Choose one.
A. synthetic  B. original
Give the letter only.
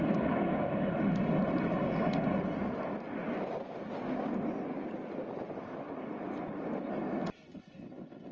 B